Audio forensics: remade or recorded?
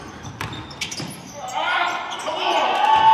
recorded